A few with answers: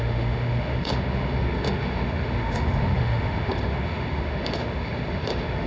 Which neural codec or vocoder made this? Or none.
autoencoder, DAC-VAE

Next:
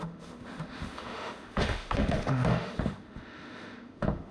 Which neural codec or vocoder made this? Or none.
autoencoder, DAC-VAE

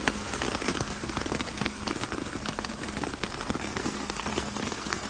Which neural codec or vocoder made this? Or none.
codec, SNAC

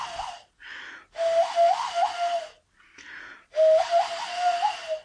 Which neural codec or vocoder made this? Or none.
none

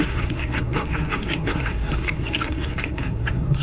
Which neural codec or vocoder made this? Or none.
codec, SNAC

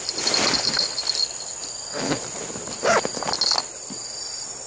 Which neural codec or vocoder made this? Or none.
none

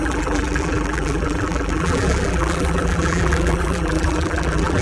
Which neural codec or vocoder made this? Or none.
vocoder, BigVGAN v2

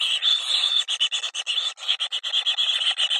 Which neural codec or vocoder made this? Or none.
none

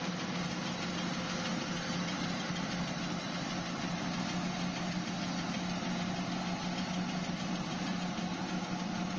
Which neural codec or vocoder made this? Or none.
none